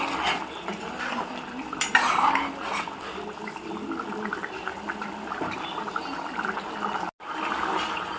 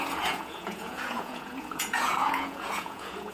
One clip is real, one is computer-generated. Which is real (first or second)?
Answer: first